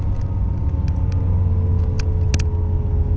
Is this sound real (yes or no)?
yes